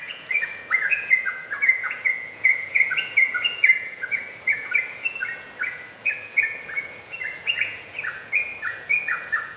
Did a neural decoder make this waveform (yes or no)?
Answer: yes